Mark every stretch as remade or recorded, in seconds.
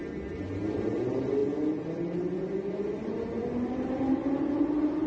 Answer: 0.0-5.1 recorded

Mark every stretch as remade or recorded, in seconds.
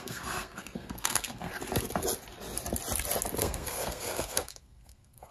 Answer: 0.0-1.5 remade; 1.5-3.4 recorded; 3.4-5.3 remade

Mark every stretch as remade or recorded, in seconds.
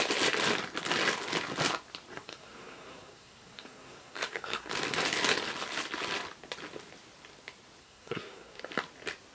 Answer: 0.0-2.1 recorded; 2.1-4.7 remade; 4.7-7.8 recorded; 7.8-8.6 remade; 8.6-9.3 recorded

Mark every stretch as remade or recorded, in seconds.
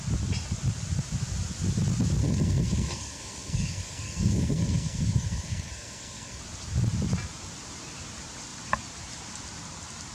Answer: 0.0-2.2 recorded; 2.2-6.4 remade; 6.4-10.1 recorded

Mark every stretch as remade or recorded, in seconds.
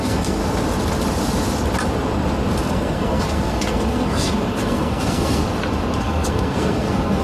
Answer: 0.0-0.4 remade; 0.4-2.7 recorded; 2.7-5.4 remade; 5.4-6.0 recorded; 6.0-7.2 remade